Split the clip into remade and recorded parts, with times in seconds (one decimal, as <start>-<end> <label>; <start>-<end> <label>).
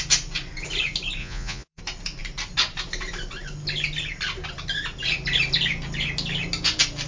0.0-1.2 recorded; 1.2-1.8 remade; 1.8-7.1 recorded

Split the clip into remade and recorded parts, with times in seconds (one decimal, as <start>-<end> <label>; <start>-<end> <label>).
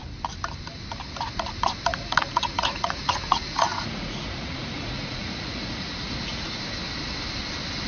0.0-1.9 recorded; 1.9-6.6 remade; 6.6-7.9 recorded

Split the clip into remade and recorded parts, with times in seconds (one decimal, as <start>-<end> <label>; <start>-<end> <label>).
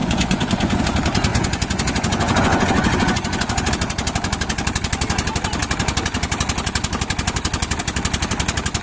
0.0-0.8 remade; 0.8-1.3 recorded; 1.3-3.7 remade; 3.7-8.8 recorded